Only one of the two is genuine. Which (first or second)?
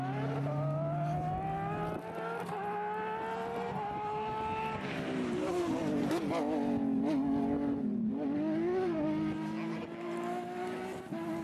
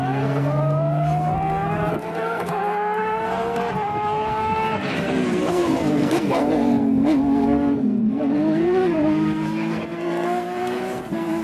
first